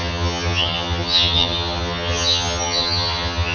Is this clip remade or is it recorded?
remade